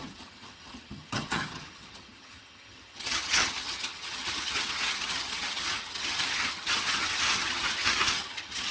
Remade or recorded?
remade